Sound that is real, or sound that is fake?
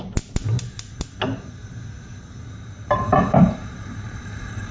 fake